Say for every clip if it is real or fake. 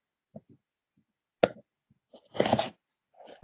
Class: real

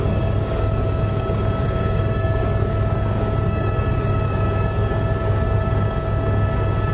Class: fake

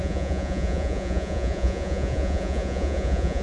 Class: fake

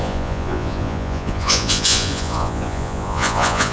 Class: fake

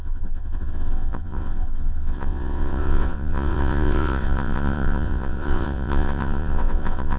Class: fake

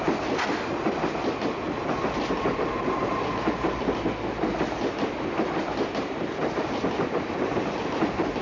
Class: real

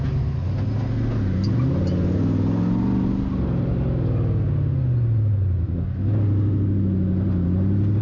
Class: real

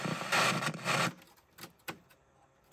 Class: real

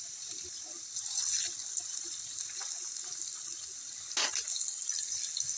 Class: real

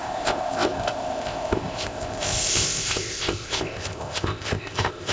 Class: fake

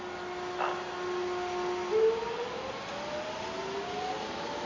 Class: real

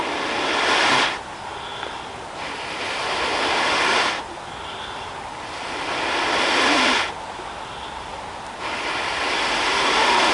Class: real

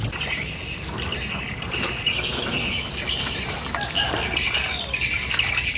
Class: real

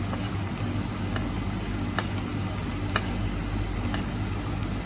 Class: real